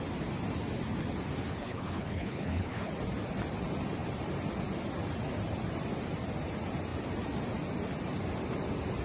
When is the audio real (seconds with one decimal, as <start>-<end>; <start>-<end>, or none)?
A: 0.0-1.6; 2.9-9.0